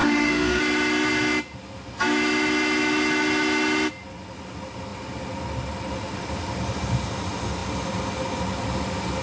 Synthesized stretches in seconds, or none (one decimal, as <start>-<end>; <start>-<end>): 0.0-0.6